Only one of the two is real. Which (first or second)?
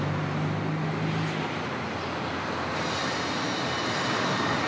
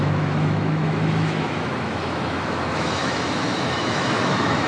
first